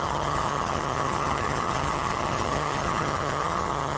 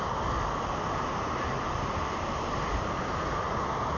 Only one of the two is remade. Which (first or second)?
first